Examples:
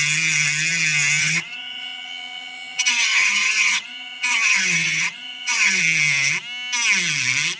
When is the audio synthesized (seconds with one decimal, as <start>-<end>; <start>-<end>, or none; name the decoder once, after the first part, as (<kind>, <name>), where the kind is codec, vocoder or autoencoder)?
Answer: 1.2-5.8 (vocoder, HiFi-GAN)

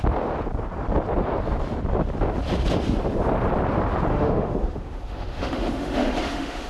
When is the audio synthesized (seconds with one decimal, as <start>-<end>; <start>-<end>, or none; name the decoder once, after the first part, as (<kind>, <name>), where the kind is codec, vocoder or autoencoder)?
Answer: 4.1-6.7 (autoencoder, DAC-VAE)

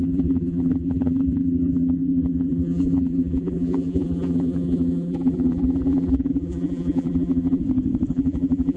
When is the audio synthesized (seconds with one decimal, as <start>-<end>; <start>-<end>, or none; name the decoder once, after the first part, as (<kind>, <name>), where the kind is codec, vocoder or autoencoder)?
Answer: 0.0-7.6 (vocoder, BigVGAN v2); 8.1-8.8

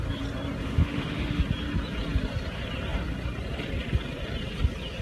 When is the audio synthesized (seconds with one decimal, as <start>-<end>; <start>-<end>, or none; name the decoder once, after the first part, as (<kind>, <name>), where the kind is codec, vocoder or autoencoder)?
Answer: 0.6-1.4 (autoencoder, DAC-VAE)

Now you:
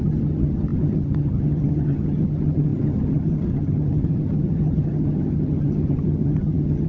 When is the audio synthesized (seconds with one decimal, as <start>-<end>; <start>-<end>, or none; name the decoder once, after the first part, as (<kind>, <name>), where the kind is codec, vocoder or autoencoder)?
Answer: 0.0-6.9 (vocoder, HiFi-GAN)

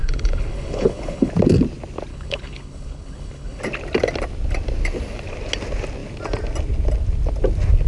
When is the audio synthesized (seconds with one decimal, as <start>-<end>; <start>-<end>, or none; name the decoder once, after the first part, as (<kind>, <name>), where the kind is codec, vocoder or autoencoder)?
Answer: 0.0-1.3 (codec, HILCodec); 2.1-3.6